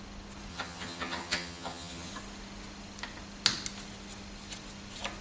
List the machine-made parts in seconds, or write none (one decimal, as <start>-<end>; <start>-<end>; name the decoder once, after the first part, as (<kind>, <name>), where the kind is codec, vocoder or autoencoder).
0.5-2.1 (vocoder, HiFi-GAN)